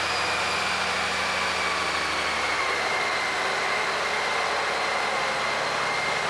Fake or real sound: real